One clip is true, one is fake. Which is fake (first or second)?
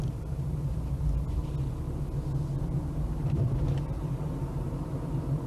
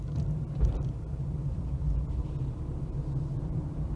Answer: second